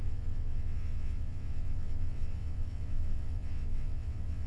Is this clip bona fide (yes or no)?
no